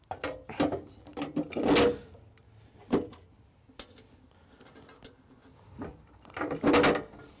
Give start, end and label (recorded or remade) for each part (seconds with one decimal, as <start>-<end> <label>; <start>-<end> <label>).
0.0-7.4 recorded